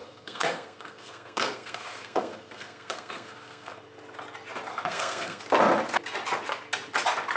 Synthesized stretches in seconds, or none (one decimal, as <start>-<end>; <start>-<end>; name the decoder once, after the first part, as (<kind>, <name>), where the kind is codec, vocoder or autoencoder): 0.0-3.8 (codec, SNAC); 4.7-5.4

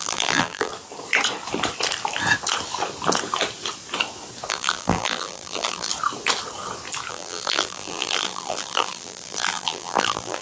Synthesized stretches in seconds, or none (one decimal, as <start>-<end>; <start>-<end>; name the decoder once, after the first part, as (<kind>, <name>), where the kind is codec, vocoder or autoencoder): 0.0-0.7 (vocoder, BigVGAN v2); 4.5-5.9; 7.1-10.4